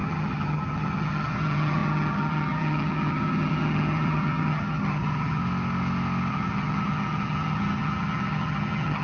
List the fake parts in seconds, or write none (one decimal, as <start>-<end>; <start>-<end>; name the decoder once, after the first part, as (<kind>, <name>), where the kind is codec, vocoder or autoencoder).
0.0-5.4 (vocoder, HiFi-GAN); 6.3-9.0